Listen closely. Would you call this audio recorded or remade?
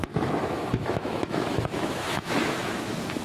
remade